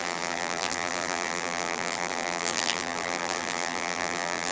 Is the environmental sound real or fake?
fake